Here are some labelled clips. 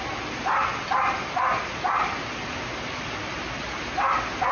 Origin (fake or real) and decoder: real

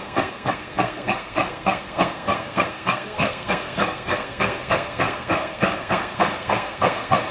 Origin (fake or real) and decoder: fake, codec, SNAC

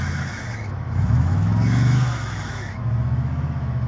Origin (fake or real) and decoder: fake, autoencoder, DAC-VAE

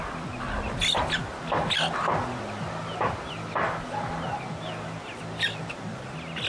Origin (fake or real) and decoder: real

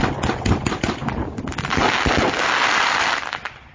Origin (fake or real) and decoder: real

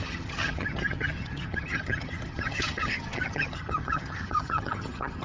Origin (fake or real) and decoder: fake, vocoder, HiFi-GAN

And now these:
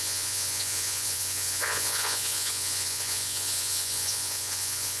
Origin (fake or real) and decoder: fake, vocoder, Vocos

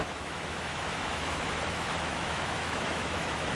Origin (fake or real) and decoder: fake, autoencoder, DAC-VAE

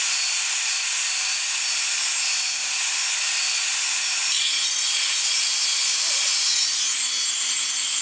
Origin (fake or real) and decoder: real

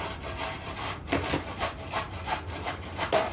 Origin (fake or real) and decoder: fake, vocoder, BigVGAN v2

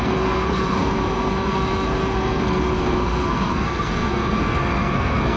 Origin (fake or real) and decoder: fake, codec, SNAC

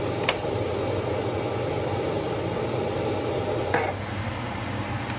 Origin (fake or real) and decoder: real